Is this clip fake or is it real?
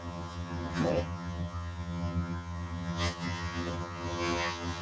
fake